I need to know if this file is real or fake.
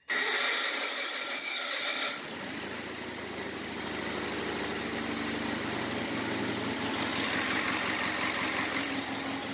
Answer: real